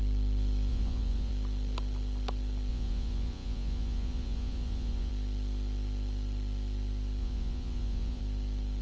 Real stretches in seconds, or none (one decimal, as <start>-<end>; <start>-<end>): 0.0-0.7; 1.3-2.7; 5.1-7.2; 8.2-8.8